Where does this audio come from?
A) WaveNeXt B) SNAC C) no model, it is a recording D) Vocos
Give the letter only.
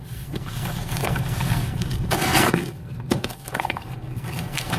B